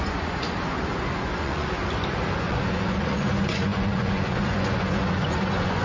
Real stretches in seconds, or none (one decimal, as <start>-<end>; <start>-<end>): 1.8-2.4